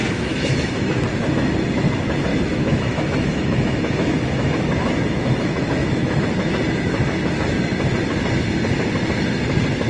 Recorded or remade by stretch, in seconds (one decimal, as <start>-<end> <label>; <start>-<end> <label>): 0.0-1.0 remade; 1.0-2.3 recorded; 2.3-6.2 remade; 6.2-9.9 recorded